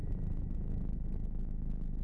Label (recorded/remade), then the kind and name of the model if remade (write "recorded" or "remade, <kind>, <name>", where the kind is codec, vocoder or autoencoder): recorded